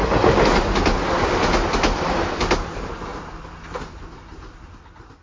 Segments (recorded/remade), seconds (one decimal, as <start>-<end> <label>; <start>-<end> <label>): 0.0-5.2 recorded